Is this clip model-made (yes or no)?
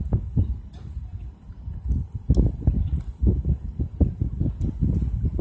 no